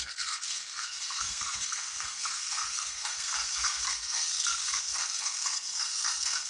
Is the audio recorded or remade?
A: remade